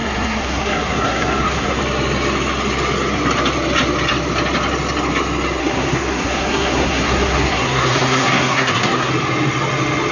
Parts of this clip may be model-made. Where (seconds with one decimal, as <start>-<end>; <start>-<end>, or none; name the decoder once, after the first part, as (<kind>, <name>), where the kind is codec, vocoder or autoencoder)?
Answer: 0.0-1.8 (codec, SNAC); 5.6-9.1